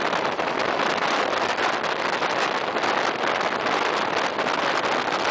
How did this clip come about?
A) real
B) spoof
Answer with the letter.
A